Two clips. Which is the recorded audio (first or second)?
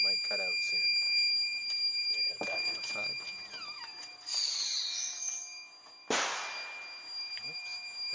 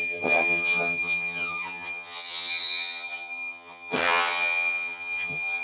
first